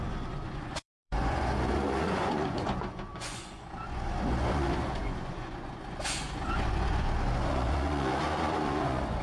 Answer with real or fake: fake